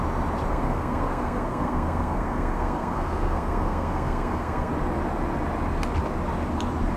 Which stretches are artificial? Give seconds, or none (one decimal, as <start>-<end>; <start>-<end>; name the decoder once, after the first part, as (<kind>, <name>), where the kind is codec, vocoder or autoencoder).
0.5-4.7 (codec, SNAC)